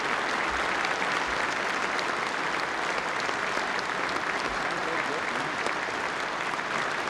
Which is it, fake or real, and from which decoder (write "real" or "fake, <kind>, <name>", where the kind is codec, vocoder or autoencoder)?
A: real